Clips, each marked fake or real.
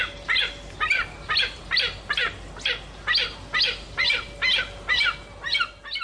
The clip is real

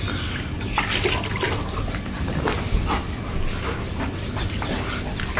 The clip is real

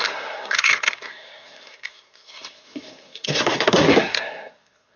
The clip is fake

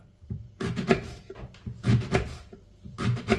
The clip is fake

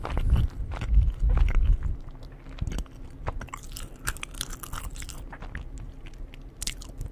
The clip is real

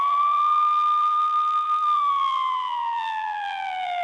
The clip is fake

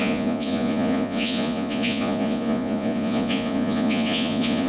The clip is fake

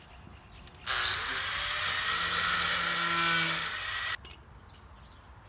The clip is real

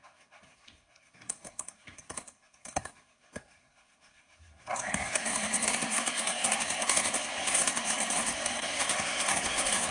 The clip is fake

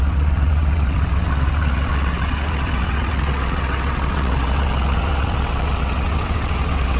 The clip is fake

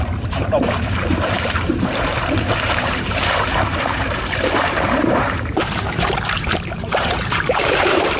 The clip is fake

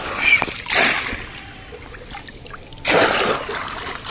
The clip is real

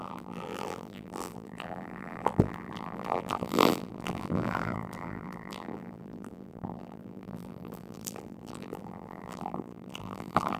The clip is fake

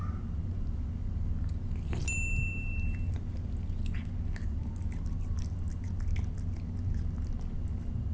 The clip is real